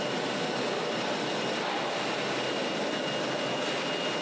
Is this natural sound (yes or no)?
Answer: yes